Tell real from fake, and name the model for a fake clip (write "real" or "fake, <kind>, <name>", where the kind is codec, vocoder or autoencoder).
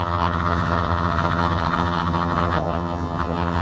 fake, vocoder, HiFi-GAN